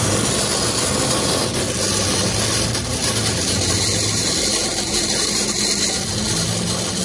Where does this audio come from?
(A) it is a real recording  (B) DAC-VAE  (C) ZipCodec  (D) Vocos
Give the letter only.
A